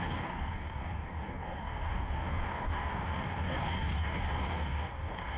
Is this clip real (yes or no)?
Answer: no